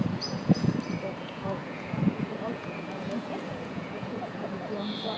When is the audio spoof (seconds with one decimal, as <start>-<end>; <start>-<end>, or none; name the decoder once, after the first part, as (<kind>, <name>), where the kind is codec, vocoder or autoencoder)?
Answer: 0.0-0.7 (vocoder, Vocos); 1.2-5.2